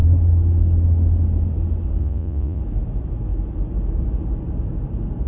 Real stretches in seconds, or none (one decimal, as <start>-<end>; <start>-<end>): 0.0-2.0; 2.6-5.3